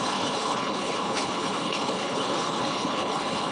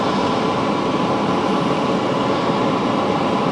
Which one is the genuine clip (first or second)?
second